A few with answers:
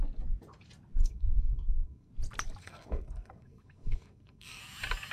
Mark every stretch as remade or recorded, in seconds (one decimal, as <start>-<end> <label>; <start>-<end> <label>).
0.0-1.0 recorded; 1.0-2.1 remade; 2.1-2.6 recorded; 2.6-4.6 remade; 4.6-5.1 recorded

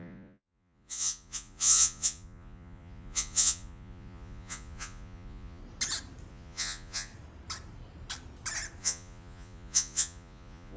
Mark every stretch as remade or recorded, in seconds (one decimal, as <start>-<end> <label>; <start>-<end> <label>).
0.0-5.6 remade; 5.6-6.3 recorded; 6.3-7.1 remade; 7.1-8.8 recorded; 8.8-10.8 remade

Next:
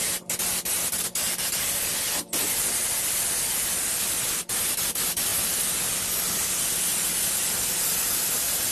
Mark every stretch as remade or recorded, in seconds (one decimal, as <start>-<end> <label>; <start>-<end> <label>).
0.0-8.7 recorded